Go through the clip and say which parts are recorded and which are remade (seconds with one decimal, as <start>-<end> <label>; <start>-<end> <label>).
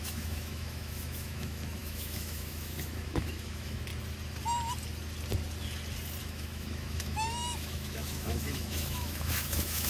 0.0-3.9 remade; 3.9-6.2 recorded; 6.2-9.9 remade